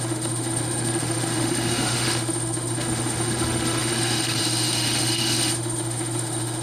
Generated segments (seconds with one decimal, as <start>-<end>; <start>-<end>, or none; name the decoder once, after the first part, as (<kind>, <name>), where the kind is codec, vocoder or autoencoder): 0.0-6.6 (autoencoder, DAC-VAE)